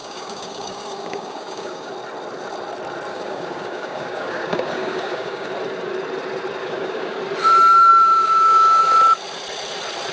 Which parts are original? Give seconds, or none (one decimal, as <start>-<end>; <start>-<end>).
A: 1.9-3.1; 5.5-6.6; 7.2-7.9; 8.8-10.1